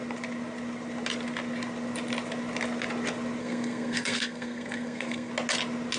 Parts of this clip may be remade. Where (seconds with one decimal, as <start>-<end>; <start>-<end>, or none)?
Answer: 3.4-5.3